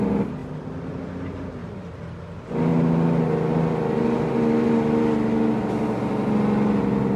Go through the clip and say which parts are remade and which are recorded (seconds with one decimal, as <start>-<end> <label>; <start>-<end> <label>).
0.0-7.2 recorded